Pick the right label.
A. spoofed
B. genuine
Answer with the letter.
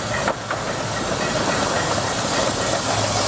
B